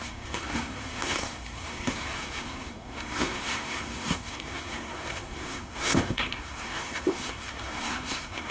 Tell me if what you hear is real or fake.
fake